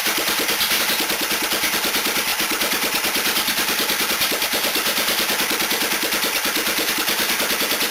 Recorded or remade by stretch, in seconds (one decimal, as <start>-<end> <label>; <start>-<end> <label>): 0.0-7.9 recorded